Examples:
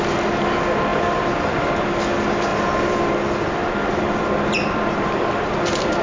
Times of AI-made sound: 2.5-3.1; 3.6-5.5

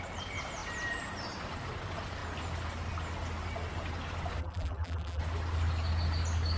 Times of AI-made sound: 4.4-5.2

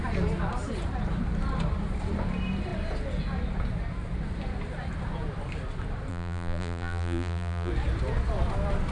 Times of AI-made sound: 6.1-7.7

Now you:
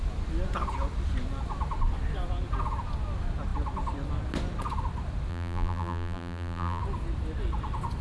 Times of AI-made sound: 5.3-6.8

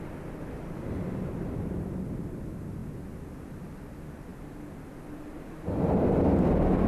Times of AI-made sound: 0.0-2.8; 3.8-6.9

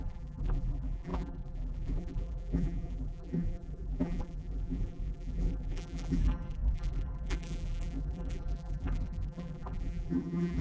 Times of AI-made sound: 0.0-10.6

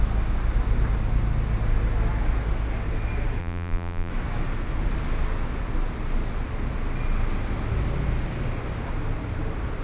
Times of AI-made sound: 3.4-4.1